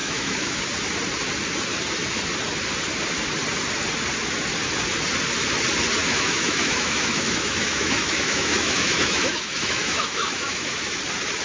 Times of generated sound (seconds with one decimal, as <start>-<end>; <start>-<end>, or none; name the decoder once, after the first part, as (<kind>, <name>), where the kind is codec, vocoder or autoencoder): 0.0-0.6 (autoencoder, DAC-VAE); 6.0-11.0